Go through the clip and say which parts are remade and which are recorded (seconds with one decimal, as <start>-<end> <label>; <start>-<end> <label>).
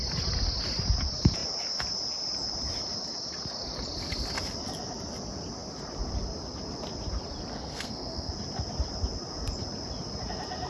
0.0-7.5 recorded; 7.5-8.3 remade; 8.3-10.7 recorded